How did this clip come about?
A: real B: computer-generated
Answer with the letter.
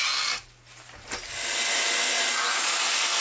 A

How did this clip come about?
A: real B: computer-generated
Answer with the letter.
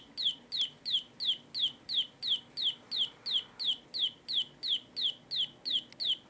A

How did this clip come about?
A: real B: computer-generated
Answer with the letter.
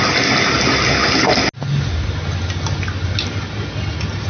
A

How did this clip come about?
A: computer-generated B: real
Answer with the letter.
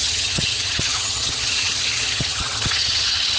A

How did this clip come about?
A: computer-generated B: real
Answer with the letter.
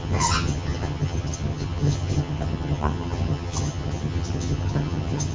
A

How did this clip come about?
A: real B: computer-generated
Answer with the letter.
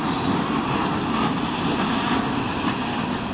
A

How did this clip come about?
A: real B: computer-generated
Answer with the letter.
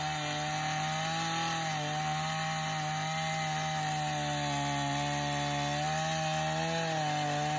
A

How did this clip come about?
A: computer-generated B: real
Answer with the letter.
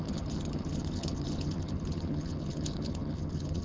A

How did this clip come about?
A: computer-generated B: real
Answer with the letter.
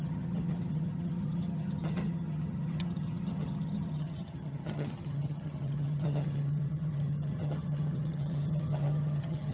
A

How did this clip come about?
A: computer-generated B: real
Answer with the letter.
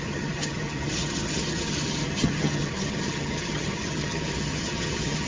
A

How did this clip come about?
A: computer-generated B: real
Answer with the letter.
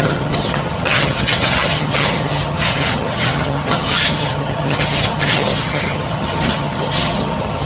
A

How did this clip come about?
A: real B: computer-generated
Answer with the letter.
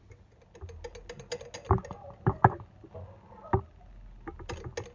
A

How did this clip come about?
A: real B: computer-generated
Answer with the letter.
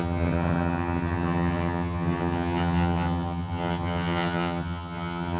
B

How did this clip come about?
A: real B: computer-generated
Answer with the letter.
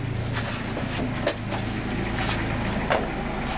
A